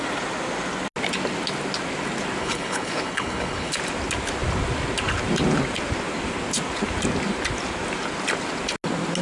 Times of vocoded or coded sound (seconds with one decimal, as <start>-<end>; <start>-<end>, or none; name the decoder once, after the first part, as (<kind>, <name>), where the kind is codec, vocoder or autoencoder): 2.4-3.7 (codec, HILCodec)